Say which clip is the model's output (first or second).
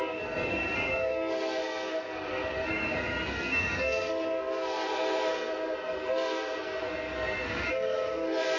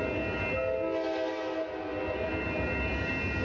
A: first